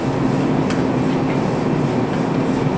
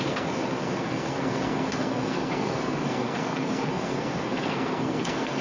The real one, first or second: first